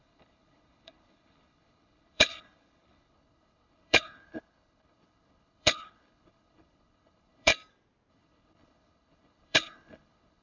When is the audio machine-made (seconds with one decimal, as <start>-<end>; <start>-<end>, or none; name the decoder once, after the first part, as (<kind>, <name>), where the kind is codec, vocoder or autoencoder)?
0.0-7.5 (codec, HILCodec); 8.1-10.4